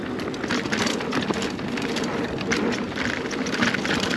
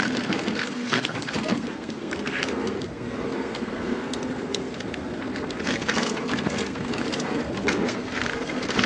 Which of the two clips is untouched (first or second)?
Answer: first